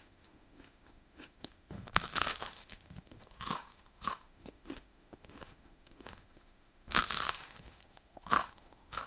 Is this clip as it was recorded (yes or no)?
no